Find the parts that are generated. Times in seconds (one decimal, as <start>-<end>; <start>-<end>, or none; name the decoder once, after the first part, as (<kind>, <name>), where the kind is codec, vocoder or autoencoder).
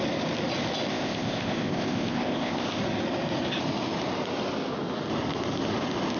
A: 0.9-2.8 (codec, ZipCodec)